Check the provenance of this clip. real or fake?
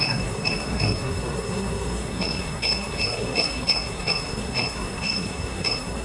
fake